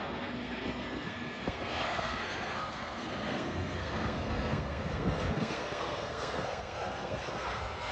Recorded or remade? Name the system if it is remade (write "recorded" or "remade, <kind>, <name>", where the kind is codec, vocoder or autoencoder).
remade, codec, SNAC